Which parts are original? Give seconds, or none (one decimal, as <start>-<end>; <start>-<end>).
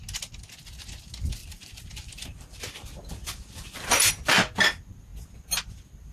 0.0-1.4; 4.1-6.1